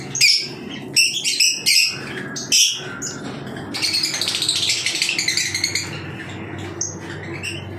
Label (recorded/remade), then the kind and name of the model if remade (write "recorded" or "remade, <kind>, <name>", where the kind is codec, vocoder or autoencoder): recorded